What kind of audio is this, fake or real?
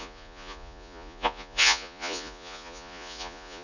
fake